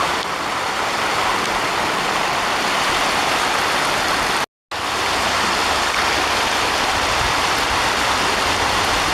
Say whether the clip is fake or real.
real